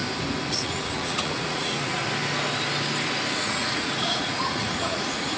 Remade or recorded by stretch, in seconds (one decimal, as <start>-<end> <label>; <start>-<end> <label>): 0.0-0.5 recorded; 0.5-2.0 remade; 2.0-3.4 recorded; 3.4-5.4 remade